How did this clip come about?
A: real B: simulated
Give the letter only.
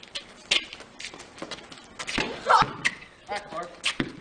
A